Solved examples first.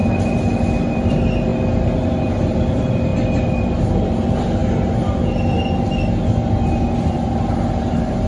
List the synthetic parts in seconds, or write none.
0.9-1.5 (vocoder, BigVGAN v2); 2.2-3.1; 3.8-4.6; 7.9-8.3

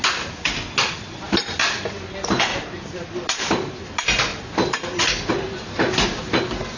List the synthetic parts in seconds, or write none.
2.5-3.8 (vocoder, BigVGAN v2)

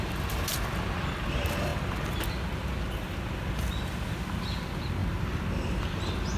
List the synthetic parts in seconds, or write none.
none